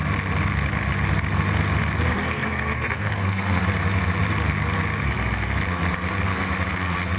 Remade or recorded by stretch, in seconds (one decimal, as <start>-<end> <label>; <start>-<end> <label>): 0.0-2.1 recorded; 2.1-3.6 remade; 3.6-7.2 recorded